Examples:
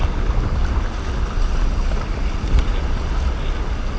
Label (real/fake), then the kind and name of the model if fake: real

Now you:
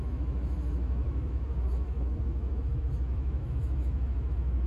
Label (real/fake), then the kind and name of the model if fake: fake, autoencoder, DAC-VAE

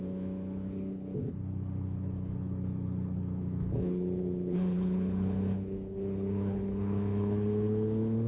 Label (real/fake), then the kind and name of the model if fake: fake, codec, HILCodec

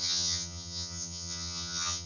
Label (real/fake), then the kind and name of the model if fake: fake, vocoder, HiFi-GAN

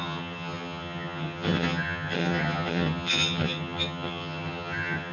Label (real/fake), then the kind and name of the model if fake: fake, vocoder, HiFi-GAN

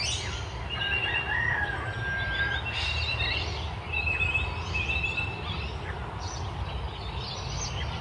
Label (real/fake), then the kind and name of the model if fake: real